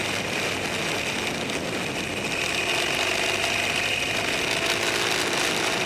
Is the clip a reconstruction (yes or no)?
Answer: no